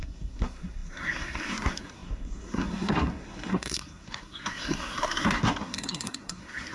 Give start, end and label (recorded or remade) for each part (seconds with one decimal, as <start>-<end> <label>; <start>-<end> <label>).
0.0-6.7 remade